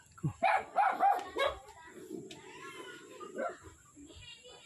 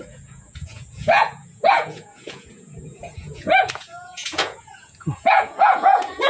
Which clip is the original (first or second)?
first